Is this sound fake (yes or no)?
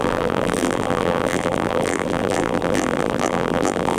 yes